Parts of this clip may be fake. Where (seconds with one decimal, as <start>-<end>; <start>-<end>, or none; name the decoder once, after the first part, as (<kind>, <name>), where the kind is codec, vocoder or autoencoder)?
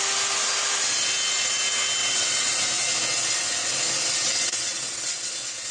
2.0-2.6 (vocoder, WaveNeXt); 4.2-5.3